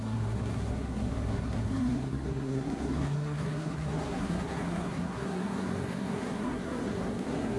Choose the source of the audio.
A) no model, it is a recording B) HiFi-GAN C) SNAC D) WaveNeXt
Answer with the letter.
C